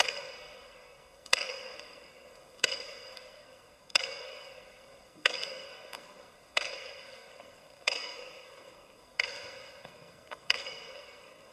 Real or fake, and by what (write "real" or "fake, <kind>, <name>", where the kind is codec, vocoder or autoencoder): fake, codec, SNAC